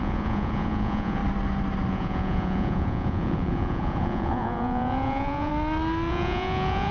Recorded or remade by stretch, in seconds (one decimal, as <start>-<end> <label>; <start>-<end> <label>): 0.0-1.2 remade; 1.2-1.9 recorded; 1.9-5.5 remade; 5.5-6.1 recorded; 6.1-6.9 remade